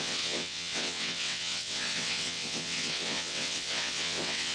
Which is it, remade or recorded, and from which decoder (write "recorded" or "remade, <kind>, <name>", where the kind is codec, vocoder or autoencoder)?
remade, vocoder, WaveNeXt